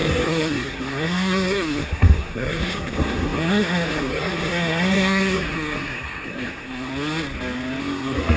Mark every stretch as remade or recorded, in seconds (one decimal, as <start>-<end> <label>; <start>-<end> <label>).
0.0-6.9 remade; 6.9-7.8 recorded; 7.8-8.4 remade